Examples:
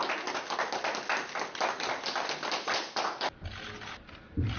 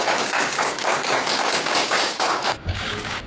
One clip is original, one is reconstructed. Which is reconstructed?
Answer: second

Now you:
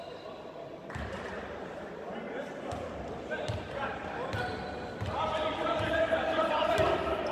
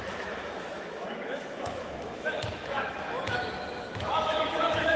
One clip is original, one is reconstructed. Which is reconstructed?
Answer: second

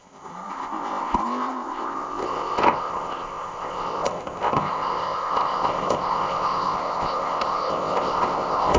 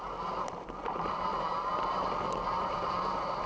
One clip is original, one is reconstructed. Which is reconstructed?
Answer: first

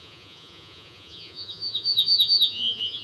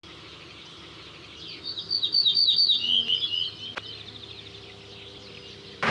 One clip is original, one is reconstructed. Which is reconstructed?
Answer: first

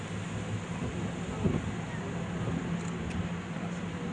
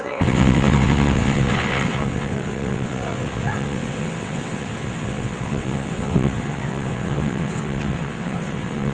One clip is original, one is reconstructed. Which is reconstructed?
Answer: second